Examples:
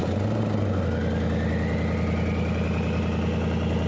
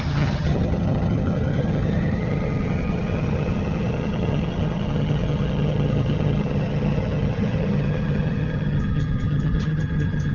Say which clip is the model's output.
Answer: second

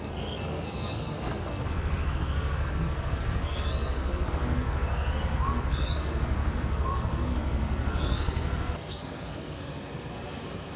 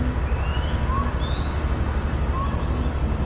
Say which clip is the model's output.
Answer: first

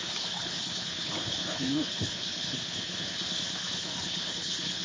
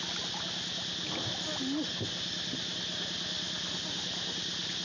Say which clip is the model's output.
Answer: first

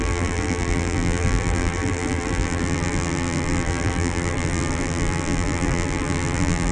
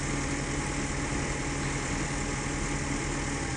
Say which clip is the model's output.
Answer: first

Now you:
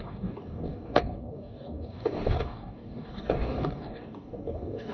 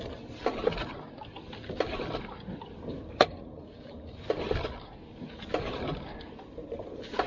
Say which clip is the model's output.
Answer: first